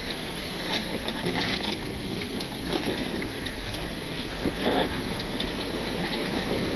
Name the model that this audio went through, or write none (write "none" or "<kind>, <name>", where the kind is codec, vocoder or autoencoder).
codec, SNAC